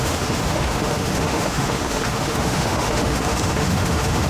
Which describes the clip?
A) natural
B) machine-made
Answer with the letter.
B